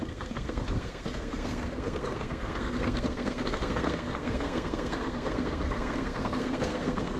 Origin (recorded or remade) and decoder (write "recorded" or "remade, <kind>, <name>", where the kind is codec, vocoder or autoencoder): remade, codec, SNAC